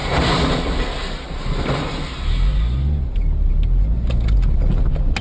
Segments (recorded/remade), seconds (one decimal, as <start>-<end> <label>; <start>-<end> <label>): 0.0-5.2 recorded